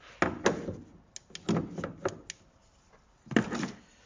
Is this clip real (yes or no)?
yes